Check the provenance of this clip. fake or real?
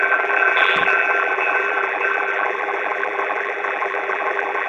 fake